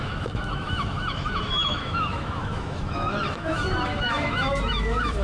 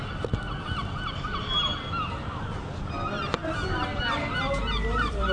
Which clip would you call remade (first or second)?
first